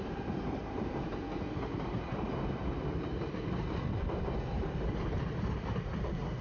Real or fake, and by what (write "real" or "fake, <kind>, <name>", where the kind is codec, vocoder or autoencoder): real